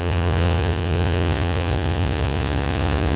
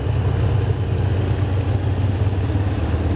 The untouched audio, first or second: second